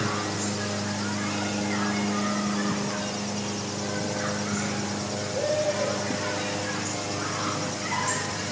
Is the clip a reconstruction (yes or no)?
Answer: no